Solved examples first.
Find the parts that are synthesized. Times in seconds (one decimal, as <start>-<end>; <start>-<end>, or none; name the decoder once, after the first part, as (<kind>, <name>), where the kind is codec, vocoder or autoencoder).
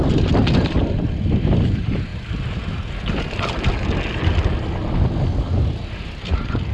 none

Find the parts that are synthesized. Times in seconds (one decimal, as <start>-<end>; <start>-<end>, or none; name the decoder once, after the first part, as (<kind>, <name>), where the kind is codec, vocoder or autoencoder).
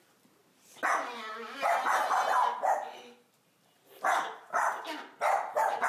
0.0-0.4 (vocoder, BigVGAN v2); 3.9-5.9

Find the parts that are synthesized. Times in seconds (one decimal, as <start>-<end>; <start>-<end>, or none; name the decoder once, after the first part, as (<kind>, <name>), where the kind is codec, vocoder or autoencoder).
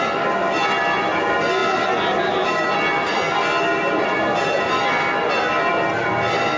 none